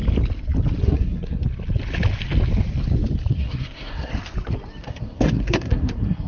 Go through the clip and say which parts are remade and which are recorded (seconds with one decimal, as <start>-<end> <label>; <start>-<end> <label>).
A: 0.0-0.8 recorded; 0.8-1.4 remade; 1.4-3.3 recorded; 3.3-4.1 remade; 4.1-4.8 recorded; 4.8-6.3 remade